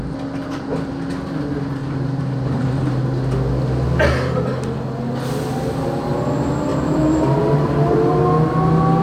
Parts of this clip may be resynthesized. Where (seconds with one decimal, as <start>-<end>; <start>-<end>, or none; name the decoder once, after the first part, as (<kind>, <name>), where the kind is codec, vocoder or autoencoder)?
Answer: 1.8-3.0 (vocoder, BigVGAN v2); 6.7-8.2